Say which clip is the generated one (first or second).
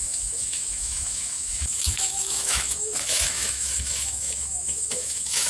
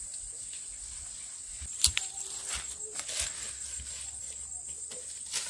first